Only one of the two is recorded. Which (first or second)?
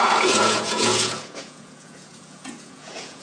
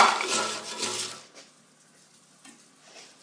second